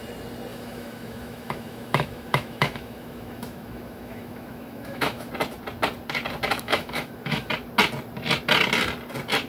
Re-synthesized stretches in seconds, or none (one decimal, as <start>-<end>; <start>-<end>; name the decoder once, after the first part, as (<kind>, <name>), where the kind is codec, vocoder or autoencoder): 0.5-5.3 (autoencoder, DAC-VAE); 6.5-7.5